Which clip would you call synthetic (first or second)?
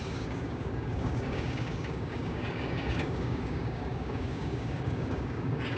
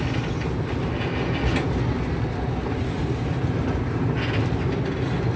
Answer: first